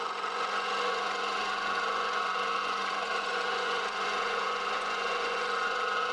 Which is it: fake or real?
fake